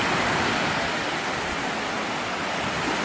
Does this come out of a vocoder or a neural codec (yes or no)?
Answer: no